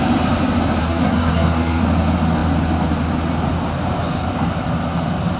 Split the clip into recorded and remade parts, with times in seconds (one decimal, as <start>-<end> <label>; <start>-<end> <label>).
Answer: 0.0-0.8 recorded; 0.8-1.8 remade; 1.8-5.4 recorded